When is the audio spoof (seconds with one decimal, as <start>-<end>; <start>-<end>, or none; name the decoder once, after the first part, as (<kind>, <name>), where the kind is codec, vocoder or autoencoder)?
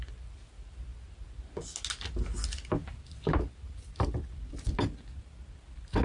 none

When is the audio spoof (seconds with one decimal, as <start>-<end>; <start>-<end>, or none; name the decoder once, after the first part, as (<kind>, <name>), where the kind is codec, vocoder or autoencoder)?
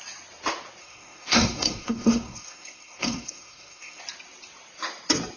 0.8-4.0 (codec, SNAC)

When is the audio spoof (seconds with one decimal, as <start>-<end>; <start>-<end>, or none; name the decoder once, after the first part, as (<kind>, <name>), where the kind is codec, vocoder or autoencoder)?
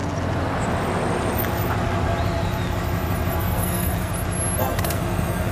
3.3-4.1 (codec, SNAC); 4.6-5.5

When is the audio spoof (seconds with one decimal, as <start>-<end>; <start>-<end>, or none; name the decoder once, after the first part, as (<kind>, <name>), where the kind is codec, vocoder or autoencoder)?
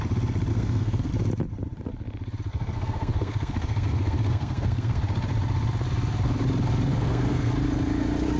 0.5-1.1 (codec, SNAC); 2.5-5.0; 6.9-7.5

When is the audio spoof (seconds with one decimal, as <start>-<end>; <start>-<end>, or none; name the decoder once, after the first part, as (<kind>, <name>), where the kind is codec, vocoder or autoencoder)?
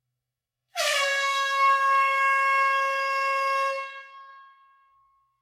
0.0-5.4 (codec, SNAC)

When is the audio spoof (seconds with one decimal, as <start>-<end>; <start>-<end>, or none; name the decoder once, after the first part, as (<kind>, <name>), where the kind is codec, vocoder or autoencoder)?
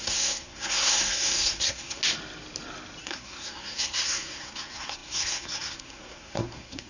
0.0-2.0 (codec, SNAC); 3.0-6.9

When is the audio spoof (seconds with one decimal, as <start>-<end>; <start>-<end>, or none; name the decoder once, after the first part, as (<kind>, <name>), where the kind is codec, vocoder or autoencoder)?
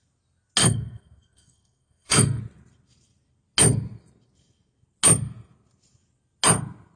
0.6-2.4 (codec, SNAC)